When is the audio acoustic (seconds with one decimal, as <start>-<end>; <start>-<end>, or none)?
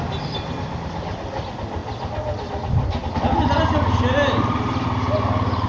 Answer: 0.0-5.7